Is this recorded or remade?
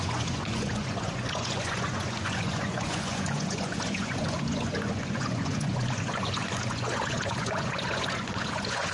remade